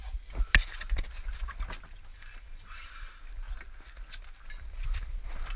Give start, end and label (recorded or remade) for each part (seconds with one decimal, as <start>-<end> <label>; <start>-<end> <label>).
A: 0.0-2.1 recorded; 2.1-3.2 remade; 3.2-5.6 recorded